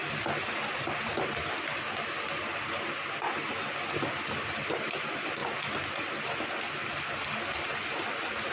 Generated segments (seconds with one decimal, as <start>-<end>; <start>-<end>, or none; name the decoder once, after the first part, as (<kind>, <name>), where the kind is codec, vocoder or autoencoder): none